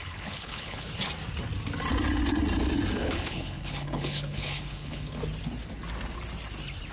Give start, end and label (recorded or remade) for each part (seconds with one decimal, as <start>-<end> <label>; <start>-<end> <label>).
0.0-0.9 remade; 0.9-3.0 recorded; 3.0-5.2 remade; 5.2-6.9 recorded